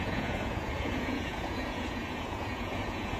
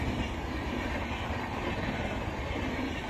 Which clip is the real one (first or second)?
second